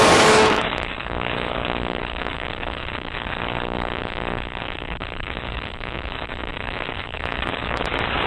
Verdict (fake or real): fake